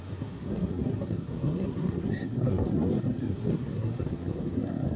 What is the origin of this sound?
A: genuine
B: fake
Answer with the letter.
B